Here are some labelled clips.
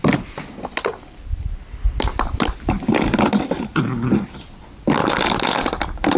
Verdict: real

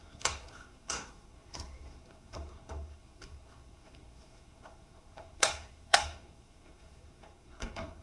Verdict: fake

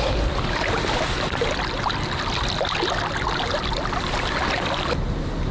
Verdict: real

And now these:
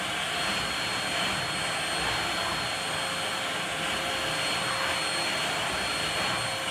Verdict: real